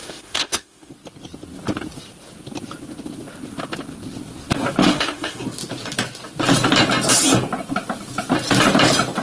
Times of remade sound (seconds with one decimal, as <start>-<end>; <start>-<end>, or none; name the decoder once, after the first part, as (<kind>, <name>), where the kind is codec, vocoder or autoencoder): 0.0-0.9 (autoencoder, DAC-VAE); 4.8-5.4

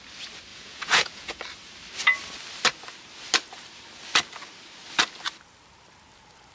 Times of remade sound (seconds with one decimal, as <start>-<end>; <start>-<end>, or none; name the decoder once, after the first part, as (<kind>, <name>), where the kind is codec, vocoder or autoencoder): 0.5-1.4 (vocoder, Vocos)

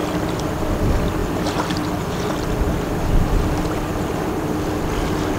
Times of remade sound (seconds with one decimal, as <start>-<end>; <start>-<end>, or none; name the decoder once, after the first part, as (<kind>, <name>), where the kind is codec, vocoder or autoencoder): none